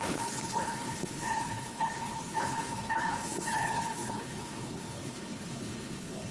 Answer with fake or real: fake